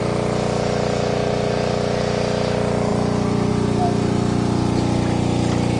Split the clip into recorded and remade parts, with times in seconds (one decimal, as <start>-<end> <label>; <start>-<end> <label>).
0.0-5.8 recorded